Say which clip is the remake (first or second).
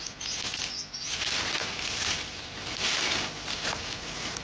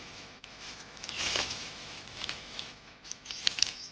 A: second